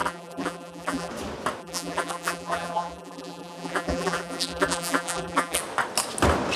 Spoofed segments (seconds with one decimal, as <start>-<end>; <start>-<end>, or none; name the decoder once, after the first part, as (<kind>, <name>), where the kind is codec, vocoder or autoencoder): 0.0-1.1 (vocoder, BigVGAN v2); 1.6-5.6